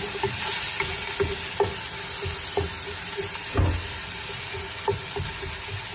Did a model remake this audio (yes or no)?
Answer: no